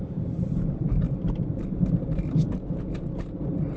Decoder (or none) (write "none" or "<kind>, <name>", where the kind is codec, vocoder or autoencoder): none